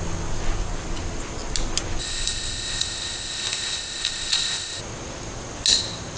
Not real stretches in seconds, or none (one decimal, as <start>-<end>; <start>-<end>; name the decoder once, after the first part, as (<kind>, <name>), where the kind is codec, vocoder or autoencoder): 2.0-4.8 (codec, ZipCodec)